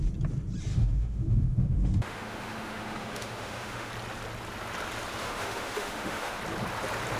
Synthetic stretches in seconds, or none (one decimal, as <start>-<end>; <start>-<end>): 0.7-3.9; 5.2-6.4

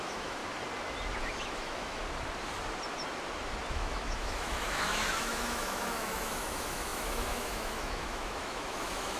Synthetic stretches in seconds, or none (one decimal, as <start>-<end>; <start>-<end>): 0.0-0.4; 1.2-2.0; 3.7-9.2

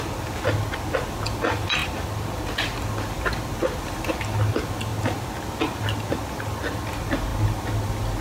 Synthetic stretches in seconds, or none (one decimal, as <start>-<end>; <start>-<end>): none

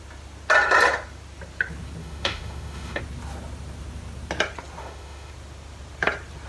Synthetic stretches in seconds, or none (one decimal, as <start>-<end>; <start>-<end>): 2.0-3.0; 4.8-5.3